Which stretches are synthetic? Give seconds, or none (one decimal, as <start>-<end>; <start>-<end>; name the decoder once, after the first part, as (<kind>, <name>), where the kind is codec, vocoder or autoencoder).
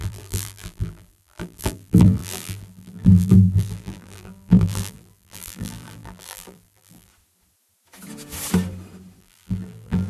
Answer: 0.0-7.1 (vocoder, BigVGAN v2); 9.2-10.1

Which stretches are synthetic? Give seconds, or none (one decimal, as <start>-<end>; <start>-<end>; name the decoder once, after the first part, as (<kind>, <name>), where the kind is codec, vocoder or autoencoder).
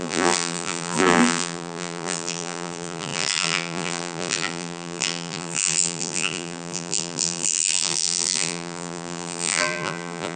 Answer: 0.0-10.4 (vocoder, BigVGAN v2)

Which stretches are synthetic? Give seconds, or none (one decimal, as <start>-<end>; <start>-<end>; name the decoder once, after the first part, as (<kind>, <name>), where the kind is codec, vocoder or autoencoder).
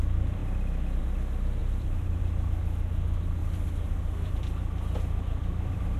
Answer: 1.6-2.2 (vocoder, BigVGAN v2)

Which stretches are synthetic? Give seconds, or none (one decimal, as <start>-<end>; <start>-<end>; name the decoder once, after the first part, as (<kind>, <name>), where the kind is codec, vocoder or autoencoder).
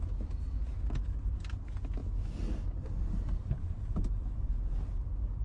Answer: 3.4-4.8 (vocoder, BigVGAN v2)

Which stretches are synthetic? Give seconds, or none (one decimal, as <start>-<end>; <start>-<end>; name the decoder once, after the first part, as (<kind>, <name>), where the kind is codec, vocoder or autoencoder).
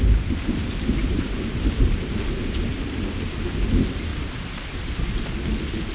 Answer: 1.0-2.5 (vocoder, BigVGAN v2); 4.1-5.2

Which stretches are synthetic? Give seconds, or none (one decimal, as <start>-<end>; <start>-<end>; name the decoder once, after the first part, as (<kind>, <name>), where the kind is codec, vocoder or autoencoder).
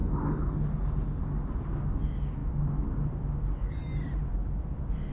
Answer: 2.4-3.1 (vocoder, BigVGAN v2); 4.4-5.1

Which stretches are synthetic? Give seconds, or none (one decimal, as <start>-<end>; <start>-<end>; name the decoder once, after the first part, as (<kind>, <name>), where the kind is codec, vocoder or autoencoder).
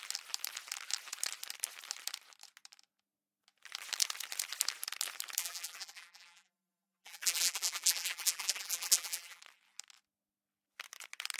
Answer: 5.4-9.4 (vocoder, BigVGAN v2)